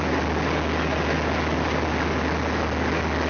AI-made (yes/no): no